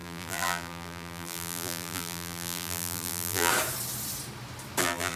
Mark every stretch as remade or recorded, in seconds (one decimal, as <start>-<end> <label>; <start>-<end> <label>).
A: 0.0-3.5 remade; 3.5-4.8 recorded; 4.8-5.2 remade